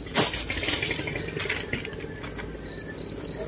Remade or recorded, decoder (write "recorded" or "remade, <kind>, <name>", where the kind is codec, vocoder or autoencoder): recorded